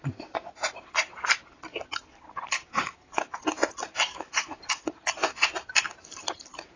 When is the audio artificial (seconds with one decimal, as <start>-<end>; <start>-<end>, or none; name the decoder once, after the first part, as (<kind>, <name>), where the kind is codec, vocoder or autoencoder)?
4.1-4.6 (autoencoder, DAC-VAE)